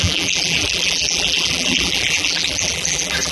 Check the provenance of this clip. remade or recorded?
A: remade